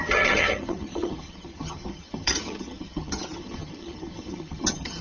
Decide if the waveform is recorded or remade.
remade